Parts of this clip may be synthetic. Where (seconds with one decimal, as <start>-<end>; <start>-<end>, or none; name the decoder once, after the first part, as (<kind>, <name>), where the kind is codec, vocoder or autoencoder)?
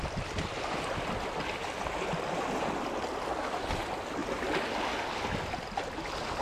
none